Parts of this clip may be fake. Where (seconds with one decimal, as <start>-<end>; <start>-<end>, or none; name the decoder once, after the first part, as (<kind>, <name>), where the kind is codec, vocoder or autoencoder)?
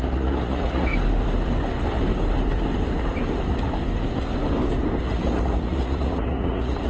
0.0-0.9 (vocoder, Vocos); 5.0-6.9